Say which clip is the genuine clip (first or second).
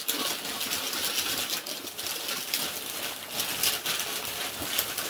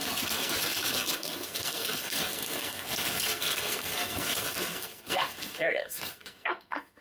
first